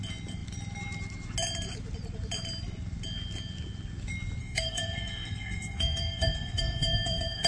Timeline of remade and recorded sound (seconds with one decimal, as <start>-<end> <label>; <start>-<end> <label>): 0.0-4.4 recorded; 4.4-7.5 remade